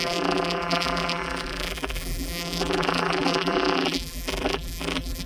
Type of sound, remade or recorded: remade